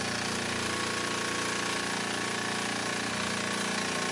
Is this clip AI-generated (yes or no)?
no